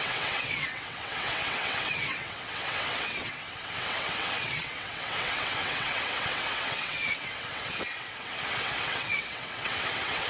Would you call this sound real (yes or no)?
no